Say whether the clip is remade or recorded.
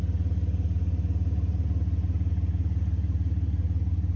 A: recorded